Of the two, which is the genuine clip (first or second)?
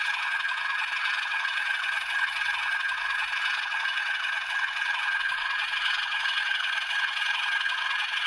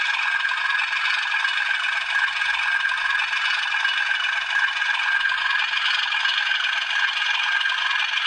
second